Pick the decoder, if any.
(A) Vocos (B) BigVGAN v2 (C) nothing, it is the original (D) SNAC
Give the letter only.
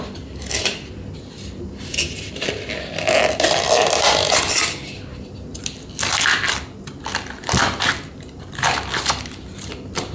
C